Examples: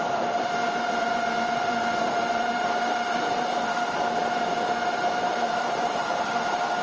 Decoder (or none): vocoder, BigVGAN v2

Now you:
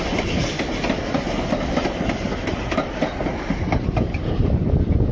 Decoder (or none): none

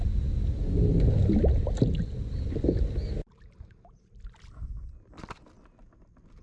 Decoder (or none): none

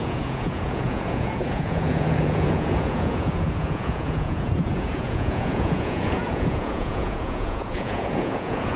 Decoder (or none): vocoder, Vocos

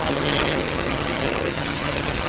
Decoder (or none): vocoder, HiFi-GAN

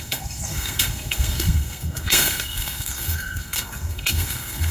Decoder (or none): codec, SNAC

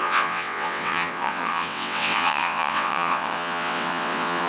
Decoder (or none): vocoder, WaveNeXt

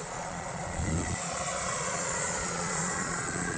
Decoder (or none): vocoder, Vocos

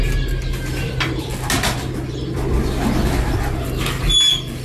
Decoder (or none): none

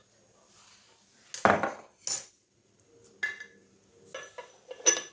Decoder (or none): none